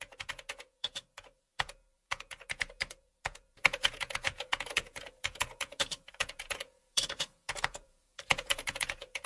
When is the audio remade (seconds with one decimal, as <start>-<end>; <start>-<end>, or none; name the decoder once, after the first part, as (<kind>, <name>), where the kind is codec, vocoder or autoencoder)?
0.0-9.3 (vocoder, Vocos)